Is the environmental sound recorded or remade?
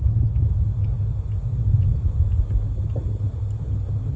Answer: recorded